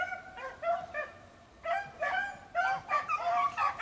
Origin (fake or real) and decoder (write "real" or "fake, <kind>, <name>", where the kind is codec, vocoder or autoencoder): fake, vocoder, BigVGAN v2